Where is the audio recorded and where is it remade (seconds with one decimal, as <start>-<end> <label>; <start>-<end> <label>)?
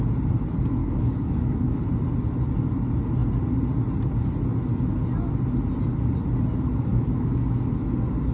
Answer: 0.0-0.8 recorded; 0.8-1.8 remade; 1.8-6.9 recorded; 6.9-7.7 remade; 7.7-8.3 recorded